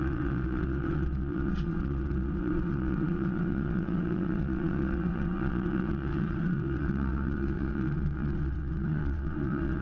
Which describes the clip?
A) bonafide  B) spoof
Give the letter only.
B